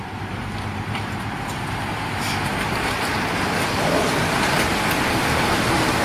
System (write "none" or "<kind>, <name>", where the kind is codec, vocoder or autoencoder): vocoder, BigVGAN v2